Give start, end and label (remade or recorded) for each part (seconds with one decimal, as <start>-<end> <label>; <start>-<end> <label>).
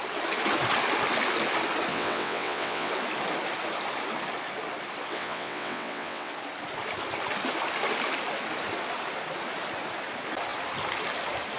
0.0-1.9 recorded; 1.9-2.9 remade; 2.9-5.1 recorded; 5.1-6.3 remade; 6.3-11.6 recorded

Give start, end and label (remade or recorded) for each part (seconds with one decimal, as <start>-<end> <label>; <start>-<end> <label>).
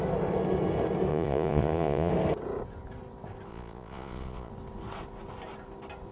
0.0-1.1 recorded; 1.1-2.1 remade; 2.1-3.5 recorded; 3.5-4.5 remade; 4.5-6.1 recorded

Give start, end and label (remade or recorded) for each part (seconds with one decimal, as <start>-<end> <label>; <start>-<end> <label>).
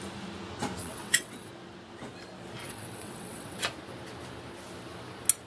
0.0-0.8 recorded; 0.8-1.5 remade; 1.5-2.6 recorded; 2.6-3.6 remade; 3.6-5.5 recorded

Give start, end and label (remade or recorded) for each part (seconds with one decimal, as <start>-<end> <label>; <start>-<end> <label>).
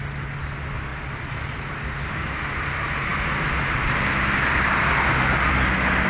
0.0-6.1 recorded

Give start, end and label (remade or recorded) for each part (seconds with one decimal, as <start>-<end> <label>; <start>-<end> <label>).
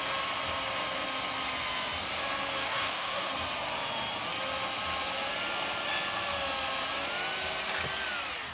0.0-2.6 recorded; 2.6-3.3 remade; 3.3-8.5 recorded